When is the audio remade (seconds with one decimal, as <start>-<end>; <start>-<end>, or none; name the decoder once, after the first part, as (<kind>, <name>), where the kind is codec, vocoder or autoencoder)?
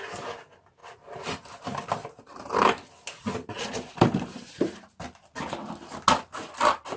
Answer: 0.8-5.0 (vocoder, BigVGAN v2)